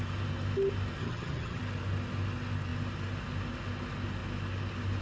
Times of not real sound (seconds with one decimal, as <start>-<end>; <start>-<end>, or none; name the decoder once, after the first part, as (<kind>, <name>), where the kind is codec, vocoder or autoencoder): 1.0-1.6 (vocoder, HiFi-GAN)